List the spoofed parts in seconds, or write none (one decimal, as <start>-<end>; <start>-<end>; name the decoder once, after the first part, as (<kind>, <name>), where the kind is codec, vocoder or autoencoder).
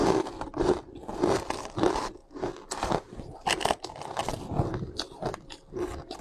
none